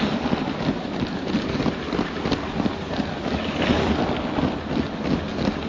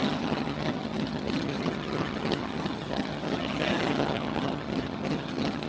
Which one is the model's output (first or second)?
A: second